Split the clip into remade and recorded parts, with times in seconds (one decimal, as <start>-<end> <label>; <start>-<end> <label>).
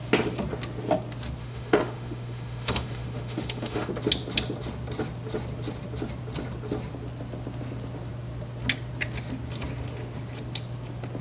0.0-1.4 recorded; 1.4-3.9 remade; 3.9-11.2 recorded